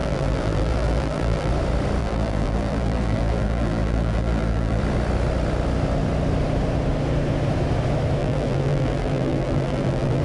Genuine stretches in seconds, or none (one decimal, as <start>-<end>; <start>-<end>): 1.5-2.0; 4.8-8.2